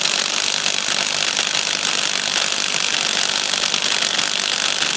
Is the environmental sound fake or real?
real